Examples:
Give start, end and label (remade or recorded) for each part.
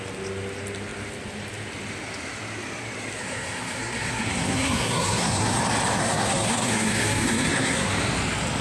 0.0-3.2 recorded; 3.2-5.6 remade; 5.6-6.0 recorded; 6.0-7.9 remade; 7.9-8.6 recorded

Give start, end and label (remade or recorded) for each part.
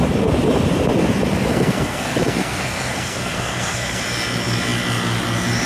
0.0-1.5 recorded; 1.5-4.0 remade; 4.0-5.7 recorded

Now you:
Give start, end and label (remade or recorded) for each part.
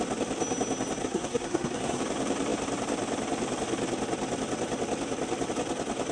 0.0-1.0 recorded; 1.0-2.0 remade; 2.0-6.1 recorded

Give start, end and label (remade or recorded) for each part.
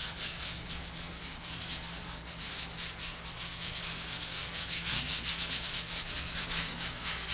0.0-7.3 remade